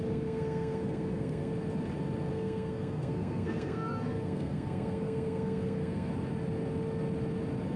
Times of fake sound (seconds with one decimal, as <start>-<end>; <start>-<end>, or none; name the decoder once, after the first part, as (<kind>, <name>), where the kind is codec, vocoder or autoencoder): 0.0-1.5 (codec, SNAC); 2.3-6.1